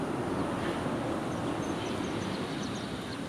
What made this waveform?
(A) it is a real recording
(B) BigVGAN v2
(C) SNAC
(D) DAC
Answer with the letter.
A